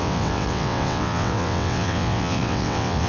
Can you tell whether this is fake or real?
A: fake